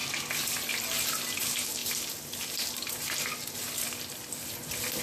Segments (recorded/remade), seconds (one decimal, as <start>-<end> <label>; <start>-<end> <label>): 0.0-5.0 recorded